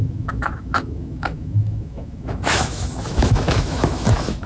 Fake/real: fake